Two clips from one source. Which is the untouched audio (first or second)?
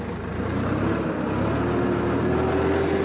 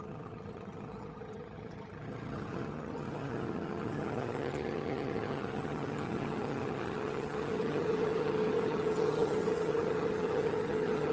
first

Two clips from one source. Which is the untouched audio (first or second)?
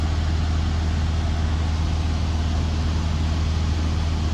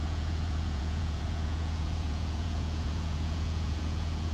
first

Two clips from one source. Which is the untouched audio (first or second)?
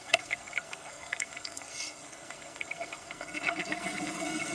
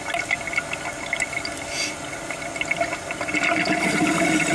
second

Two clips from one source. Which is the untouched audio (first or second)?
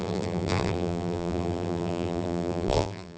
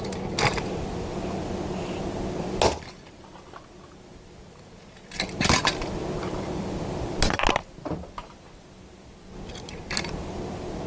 second